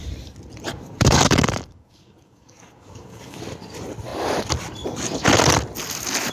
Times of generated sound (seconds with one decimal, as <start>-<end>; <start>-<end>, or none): 0.7-3.4